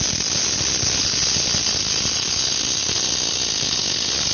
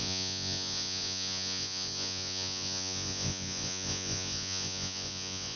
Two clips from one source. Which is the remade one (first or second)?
second